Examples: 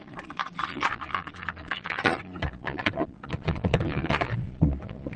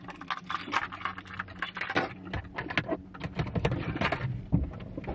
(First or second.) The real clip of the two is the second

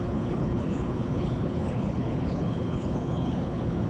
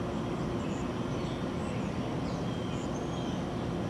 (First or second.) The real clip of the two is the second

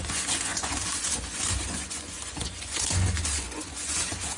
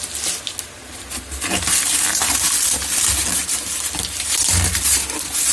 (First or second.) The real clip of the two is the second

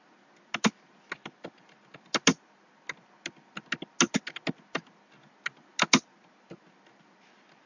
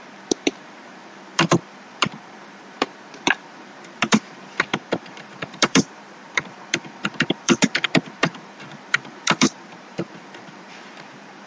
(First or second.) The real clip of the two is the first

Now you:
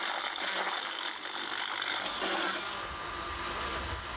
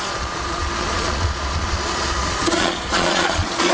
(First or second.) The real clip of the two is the first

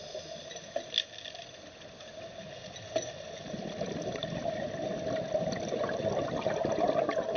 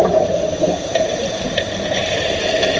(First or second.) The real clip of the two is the first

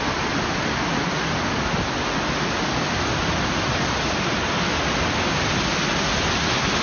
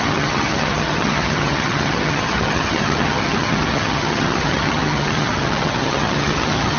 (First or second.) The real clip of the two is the first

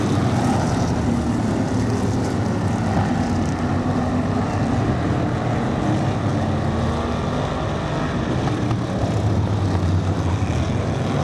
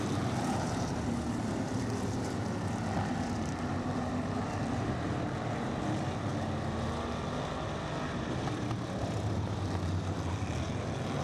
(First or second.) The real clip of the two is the first